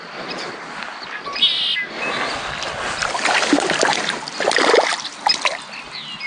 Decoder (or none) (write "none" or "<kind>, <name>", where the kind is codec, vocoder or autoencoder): none